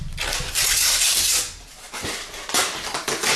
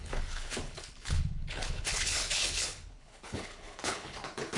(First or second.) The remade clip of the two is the second